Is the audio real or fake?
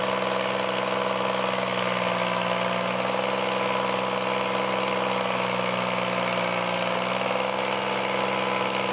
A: real